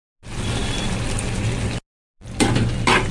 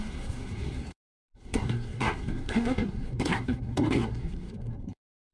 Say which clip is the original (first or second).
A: first